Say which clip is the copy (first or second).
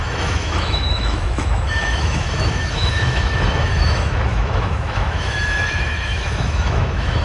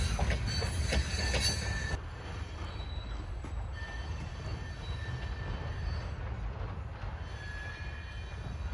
first